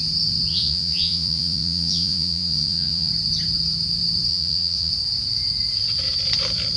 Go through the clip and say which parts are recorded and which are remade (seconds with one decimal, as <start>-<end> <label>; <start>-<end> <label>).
0.0-0.5 recorded; 0.5-3.1 remade; 3.1-4.3 recorded; 4.3-4.9 remade; 4.9-6.8 recorded